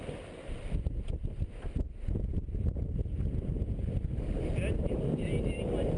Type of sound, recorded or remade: recorded